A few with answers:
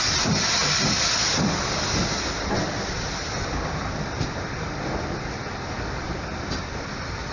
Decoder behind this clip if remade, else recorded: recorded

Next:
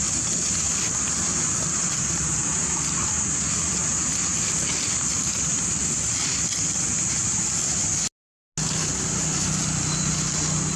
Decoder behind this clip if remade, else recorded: recorded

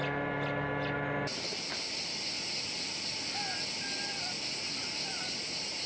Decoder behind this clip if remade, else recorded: recorded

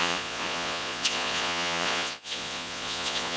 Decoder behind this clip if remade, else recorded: remade, vocoder, Vocos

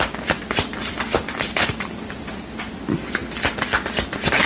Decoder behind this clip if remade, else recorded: recorded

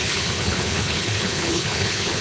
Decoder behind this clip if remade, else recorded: remade, codec, HILCodec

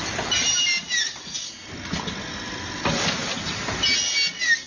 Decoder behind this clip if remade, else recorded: recorded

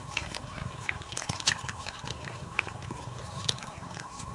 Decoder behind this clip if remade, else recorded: remade, codec, SNAC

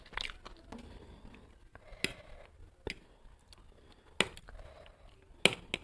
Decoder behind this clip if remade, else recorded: recorded